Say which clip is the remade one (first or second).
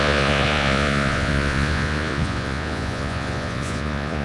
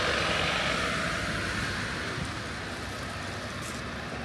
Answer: first